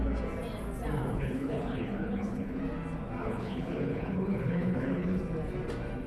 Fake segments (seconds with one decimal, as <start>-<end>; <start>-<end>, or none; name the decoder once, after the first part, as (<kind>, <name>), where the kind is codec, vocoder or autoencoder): 1.1-2.6 (codec, HILCodec); 3.2-5.2